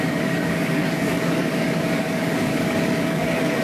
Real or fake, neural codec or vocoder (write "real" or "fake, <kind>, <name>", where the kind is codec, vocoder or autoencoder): fake, codec, DAC